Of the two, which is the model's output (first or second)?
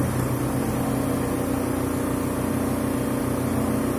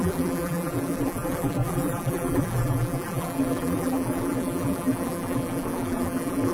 second